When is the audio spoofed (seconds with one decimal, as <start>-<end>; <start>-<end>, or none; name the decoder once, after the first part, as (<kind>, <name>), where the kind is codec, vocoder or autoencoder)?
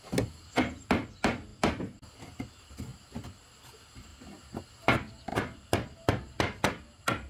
none